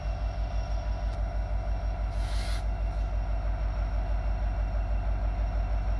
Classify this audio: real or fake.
real